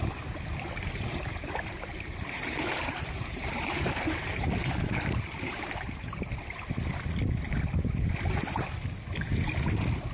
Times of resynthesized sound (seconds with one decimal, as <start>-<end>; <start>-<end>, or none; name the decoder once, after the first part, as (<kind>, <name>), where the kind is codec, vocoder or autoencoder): 1.1-6.3 (vocoder, BigVGAN v2)

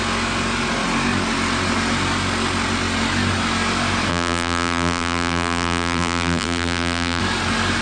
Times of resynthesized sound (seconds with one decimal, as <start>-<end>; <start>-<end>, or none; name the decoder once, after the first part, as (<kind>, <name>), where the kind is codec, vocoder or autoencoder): 4.1-7.2 (vocoder, BigVGAN v2)